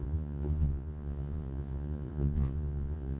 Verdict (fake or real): fake